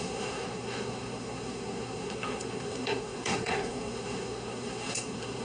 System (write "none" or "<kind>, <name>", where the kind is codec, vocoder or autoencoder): codec, SNAC